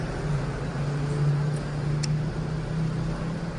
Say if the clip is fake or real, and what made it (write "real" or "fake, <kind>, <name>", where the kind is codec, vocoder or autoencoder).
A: real